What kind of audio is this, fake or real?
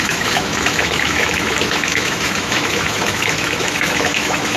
fake